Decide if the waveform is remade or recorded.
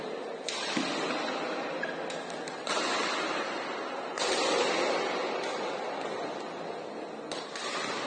recorded